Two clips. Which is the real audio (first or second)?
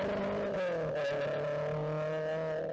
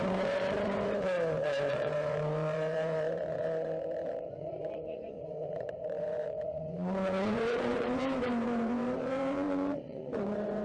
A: first